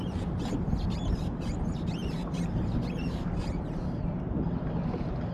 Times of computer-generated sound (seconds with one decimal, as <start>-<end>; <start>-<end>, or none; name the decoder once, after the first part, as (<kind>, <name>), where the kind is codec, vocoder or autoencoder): 0.0-5.3 (vocoder, BigVGAN v2)